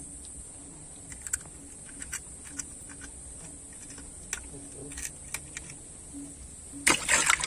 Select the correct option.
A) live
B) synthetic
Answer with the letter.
A